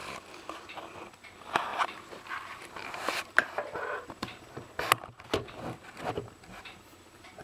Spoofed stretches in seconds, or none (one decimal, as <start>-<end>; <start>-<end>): 1.7-6.1